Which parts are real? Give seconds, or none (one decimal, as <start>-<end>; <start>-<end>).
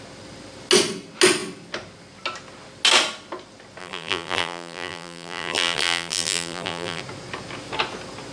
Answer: 0.0-3.8; 7.0-8.3